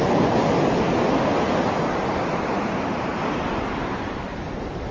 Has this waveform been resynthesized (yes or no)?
no